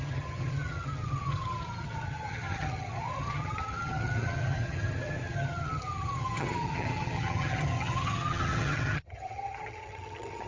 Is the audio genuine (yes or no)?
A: no